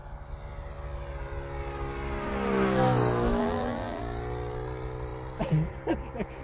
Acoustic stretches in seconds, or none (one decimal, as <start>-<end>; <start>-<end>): 0.0-3.4; 4.0-6.4